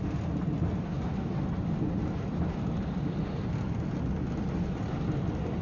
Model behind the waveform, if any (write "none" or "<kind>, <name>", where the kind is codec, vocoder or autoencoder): none